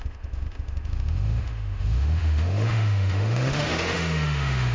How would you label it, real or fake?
fake